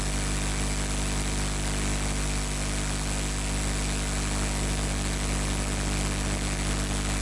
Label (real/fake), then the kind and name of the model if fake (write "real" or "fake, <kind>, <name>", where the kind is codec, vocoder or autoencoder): real